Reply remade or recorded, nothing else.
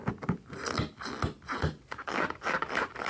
recorded